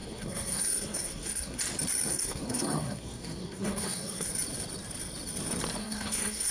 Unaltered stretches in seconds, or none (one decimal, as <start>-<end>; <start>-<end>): 1.6-2.1; 4.3-5.8